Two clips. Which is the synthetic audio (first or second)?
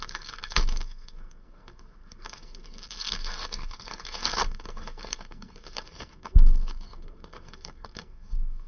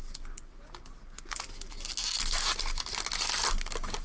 first